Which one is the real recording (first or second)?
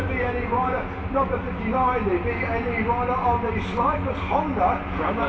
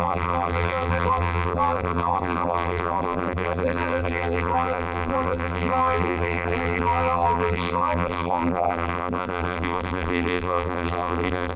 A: first